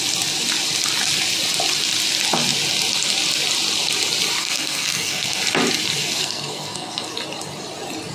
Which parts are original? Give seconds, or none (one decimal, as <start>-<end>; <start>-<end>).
0.0-4.4; 5.4-6.0; 7.1-8.1